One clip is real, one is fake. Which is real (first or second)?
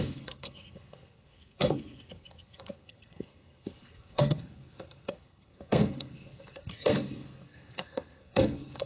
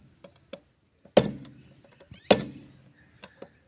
second